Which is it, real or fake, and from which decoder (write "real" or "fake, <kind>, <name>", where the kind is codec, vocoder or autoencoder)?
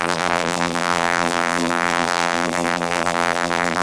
fake, vocoder, BigVGAN v2